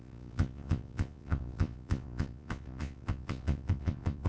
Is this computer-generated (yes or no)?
yes